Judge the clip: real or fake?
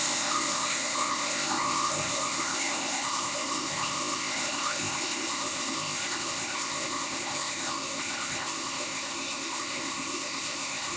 fake